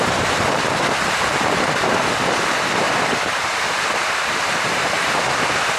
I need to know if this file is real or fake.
fake